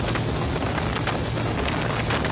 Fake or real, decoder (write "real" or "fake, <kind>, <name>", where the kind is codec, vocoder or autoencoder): real